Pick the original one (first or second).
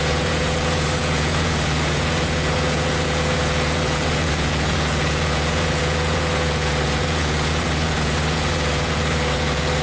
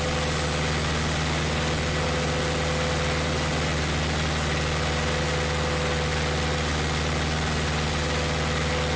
second